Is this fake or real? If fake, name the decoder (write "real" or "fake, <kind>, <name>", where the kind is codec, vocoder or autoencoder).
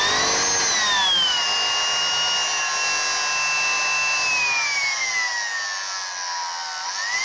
real